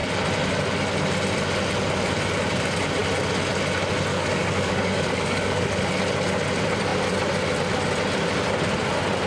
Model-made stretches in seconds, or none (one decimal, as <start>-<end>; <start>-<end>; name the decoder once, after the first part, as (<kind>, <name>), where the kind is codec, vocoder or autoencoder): 4.1-5.8 (codec, DAC)